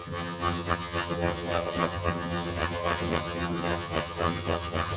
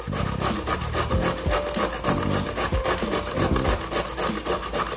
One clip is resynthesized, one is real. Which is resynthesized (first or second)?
first